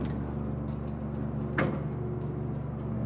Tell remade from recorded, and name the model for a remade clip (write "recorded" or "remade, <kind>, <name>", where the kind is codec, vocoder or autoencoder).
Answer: recorded